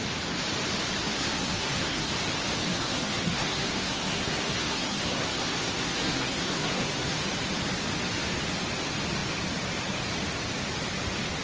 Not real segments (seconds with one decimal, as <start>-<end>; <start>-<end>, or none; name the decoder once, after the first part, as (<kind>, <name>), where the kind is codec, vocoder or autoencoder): 1.0-2.1 (codec, SNAC); 2.7-7.2